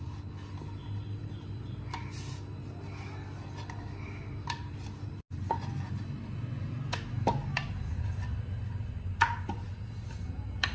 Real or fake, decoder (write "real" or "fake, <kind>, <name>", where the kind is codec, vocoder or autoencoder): real